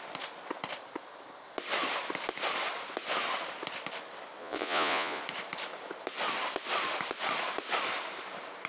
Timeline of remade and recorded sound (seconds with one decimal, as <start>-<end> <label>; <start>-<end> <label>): 0.0-4.4 recorded; 4.4-5.2 remade; 5.2-8.7 recorded